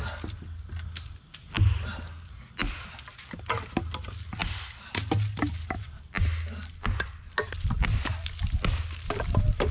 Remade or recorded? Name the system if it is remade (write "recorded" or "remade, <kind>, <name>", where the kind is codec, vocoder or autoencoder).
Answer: recorded